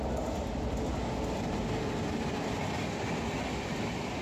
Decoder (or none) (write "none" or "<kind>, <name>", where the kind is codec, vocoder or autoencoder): none